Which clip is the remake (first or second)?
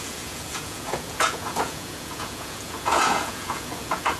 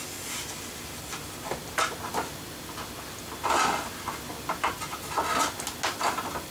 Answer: first